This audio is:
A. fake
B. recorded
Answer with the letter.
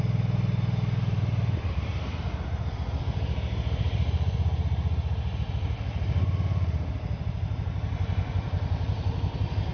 B